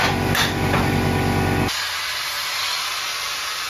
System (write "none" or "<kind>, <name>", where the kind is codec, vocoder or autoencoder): none